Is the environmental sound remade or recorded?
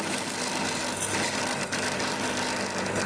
recorded